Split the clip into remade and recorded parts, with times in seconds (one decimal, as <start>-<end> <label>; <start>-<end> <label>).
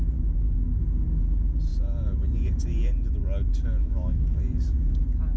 0.0-3.8 recorded; 3.8-4.4 remade; 4.4-5.4 recorded